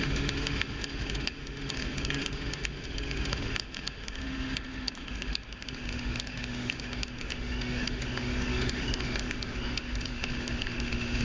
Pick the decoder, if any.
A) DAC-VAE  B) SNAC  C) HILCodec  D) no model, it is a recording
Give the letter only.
A